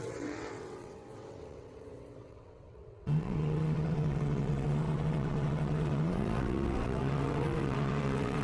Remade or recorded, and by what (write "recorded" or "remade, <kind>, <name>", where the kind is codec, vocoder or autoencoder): remade, vocoder, WaveNeXt